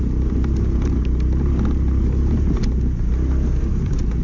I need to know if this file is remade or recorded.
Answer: recorded